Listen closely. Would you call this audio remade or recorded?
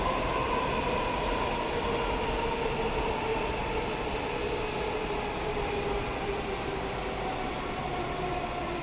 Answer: recorded